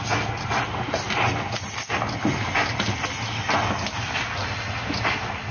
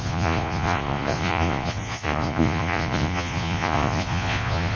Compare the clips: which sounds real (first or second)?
first